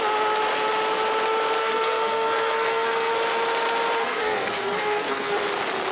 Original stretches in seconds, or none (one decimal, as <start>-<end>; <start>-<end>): 0.0-1.6; 3.1-4.0; 5.3-5.9